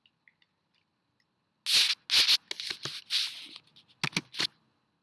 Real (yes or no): yes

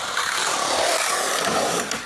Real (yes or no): yes